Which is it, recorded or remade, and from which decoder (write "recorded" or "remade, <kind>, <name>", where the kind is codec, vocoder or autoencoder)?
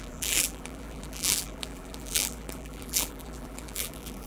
remade, vocoder, BigVGAN v2